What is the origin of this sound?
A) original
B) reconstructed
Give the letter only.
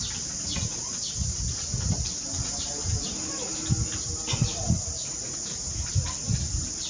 A